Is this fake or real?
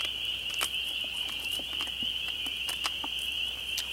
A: fake